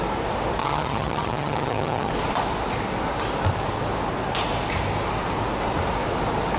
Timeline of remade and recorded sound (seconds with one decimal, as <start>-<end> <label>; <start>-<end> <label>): 0.0-0.6 recorded; 0.6-2.1 remade; 2.1-6.6 recorded